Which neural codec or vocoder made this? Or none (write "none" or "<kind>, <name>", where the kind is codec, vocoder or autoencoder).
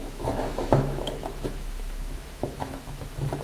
autoencoder, DAC-VAE